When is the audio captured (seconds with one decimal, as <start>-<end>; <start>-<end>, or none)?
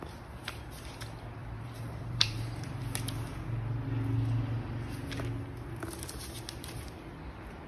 0.0-1.4; 2.8-7.7